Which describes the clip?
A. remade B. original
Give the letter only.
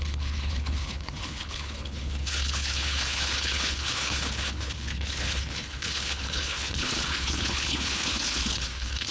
A